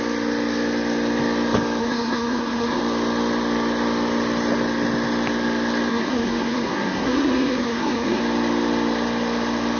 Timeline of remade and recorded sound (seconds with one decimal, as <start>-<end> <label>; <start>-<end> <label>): 0.0-1.8 recorded; 1.8-2.8 remade; 2.8-5.9 recorded; 5.9-8.2 remade; 8.2-9.8 recorded